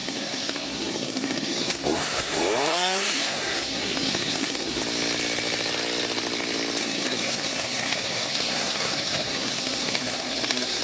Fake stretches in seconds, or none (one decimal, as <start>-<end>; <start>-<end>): 0.0-4.8; 6.8-10.8